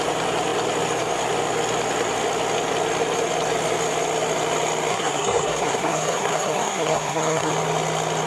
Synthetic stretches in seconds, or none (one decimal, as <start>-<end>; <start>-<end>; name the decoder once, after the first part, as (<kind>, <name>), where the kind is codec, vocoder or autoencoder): 4.9-7.5 (codec, SNAC)